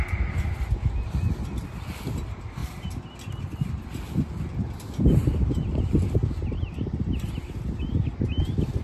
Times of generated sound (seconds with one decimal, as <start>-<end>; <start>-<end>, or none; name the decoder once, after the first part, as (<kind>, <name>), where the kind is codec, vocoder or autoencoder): none